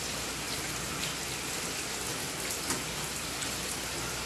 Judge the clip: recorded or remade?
recorded